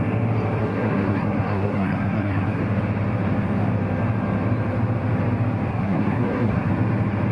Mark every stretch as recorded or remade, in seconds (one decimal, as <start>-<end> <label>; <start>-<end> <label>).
0.0-0.6 recorded; 0.6-2.6 remade; 2.6-5.7 recorded; 5.7-6.7 remade; 6.7-7.3 recorded

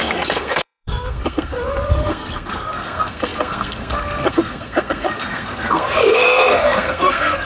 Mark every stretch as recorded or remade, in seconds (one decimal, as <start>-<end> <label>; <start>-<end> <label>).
0.0-7.5 remade

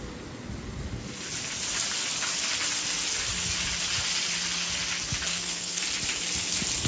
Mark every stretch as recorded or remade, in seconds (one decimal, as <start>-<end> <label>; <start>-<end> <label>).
0.0-5.3 recorded; 5.3-5.8 remade; 5.8-6.9 recorded

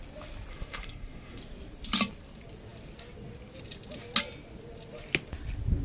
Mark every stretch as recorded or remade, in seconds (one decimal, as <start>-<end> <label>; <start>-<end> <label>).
0.0-0.5 recorded; 0.5-1.4 remade; 1.4-5.8 recorded

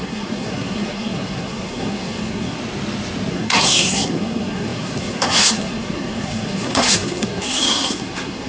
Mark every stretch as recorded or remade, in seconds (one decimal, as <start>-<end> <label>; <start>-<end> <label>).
0.0-2.6 remade; 2.6-3.3 recorded; 3.3-8.5 remade

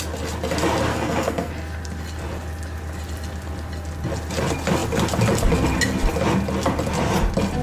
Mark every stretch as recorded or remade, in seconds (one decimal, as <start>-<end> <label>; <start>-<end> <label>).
0.0-0.9 recorded; 0.9-1.5 remade; 1.5-7.6 recorded